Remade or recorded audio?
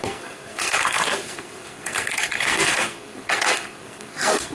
remade